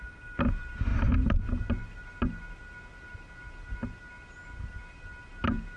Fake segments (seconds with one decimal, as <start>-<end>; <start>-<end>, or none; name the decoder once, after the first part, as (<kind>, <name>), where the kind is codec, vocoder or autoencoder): none